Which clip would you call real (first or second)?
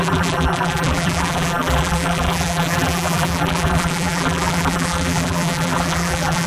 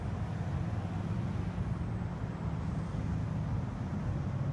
second